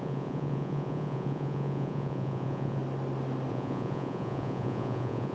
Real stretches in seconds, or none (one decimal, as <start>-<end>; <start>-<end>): 2.8-3.5